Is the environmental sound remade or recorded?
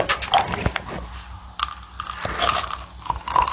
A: recorded